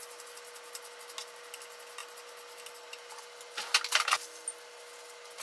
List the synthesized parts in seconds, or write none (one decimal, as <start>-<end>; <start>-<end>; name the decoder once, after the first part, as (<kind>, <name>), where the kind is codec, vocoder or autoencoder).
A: none